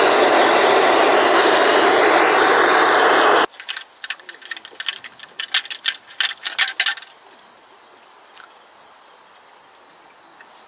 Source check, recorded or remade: recorded